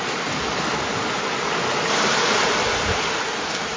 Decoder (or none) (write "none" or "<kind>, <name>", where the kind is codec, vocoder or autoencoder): none